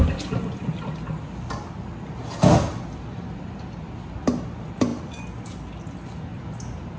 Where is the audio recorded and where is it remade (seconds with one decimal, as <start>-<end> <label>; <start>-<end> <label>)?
0.0-7.0 recorded